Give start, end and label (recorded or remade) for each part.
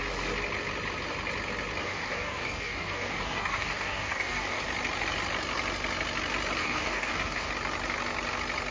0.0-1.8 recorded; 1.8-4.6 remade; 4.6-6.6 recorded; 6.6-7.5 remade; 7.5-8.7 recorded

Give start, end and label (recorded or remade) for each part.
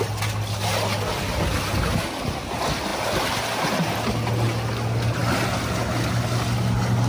0.0-7.1 recorded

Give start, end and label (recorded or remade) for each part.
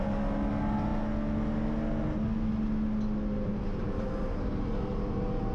0.0-5.5 recorded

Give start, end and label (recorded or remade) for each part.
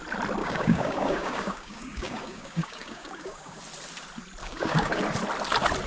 0.0-0.4 recorded; 0.4-3.6 remade; 3.6-4.4 recorded; 4.4-5.0 remade; 5.0-5.9 recorded